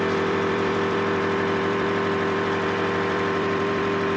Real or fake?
fake